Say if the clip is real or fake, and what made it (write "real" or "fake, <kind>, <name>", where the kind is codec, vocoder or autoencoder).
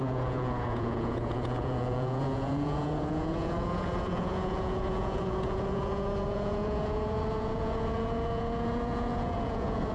fake, vocoder, Vocos